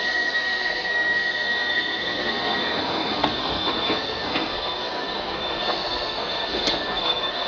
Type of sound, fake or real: fake